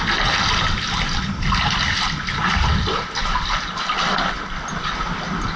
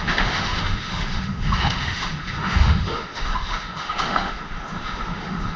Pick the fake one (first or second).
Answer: second